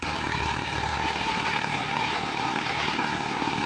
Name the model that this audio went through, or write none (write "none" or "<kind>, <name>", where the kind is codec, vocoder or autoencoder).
codec, SNAC